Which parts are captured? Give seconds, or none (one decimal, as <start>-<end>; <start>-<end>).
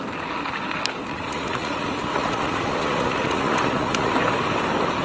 0.0-1.1; 4.1-5.0